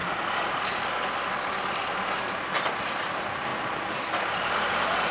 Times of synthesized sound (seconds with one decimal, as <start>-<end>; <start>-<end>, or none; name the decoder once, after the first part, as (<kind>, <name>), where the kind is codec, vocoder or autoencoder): 3.1-5.1 (vocoder, BigVGAN v2)